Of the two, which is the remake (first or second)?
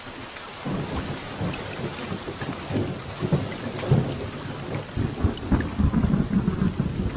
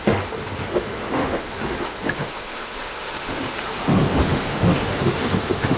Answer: second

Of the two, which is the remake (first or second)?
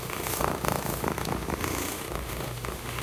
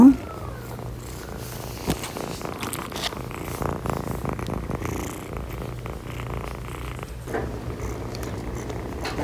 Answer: first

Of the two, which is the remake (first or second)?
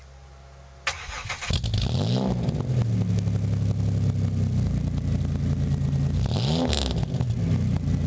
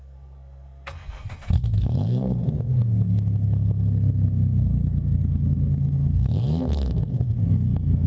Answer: second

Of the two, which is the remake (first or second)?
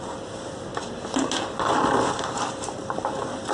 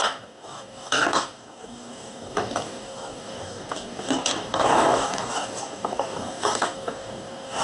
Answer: second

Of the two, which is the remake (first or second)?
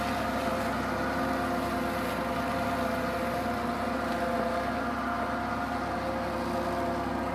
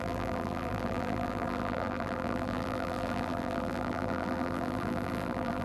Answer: second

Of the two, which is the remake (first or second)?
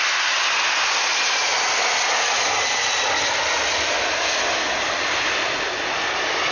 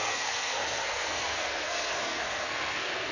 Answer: second